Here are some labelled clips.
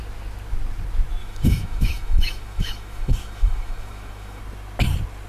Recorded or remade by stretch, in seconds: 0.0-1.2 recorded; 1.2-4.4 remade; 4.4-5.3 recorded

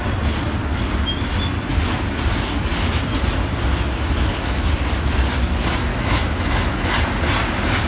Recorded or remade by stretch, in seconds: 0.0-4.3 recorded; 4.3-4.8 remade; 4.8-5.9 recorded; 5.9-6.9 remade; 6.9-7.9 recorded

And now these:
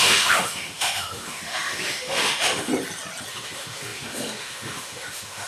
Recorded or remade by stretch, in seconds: 0.0-2.7 remade; 2.7-3.3 recorded; 3.3-5.5 remade